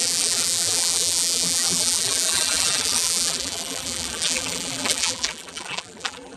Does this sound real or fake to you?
fake